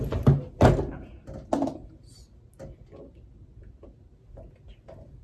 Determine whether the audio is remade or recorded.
recorded